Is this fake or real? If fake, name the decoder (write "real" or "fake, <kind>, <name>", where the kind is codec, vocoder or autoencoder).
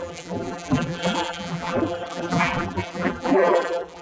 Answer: fake, vocoder, BigVGAN v2